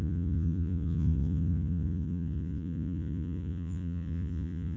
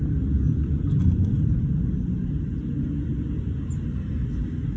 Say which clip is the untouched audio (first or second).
second